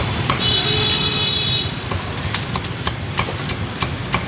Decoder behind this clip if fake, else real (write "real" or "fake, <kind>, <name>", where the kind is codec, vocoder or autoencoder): real